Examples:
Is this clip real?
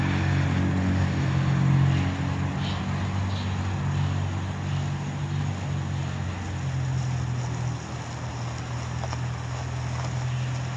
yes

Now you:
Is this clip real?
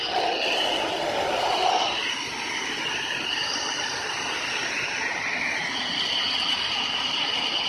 yes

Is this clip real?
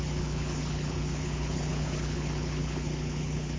no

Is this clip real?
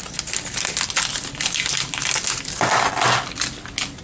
yes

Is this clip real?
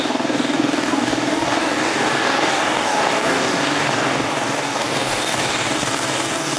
no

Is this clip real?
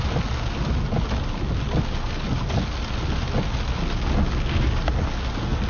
yes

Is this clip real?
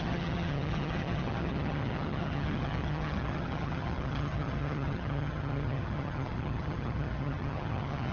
no